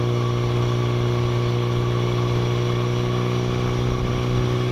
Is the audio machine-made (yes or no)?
no